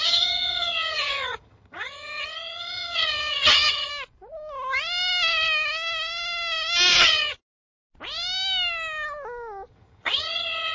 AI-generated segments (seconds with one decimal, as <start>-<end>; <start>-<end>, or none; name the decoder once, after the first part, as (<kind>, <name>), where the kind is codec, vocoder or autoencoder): 0.0-3.9 (vocoder, HiFi-GAN); 7.0-7.4; 9.7-10.7